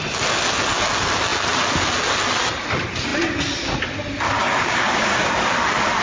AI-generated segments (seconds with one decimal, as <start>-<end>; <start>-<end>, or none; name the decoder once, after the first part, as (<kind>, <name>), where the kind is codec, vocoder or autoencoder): 4.4-5.3 (codec, DAC)